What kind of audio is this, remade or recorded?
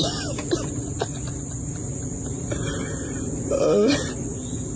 recorded